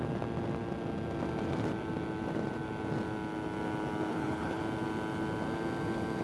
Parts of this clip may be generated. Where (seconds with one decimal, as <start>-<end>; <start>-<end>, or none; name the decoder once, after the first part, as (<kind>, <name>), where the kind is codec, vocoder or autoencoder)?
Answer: 4.1-4.6 (codec, HILCodec)